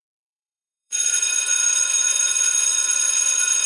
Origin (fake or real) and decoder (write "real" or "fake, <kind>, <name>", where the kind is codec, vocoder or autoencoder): fake, vocoder, Vocos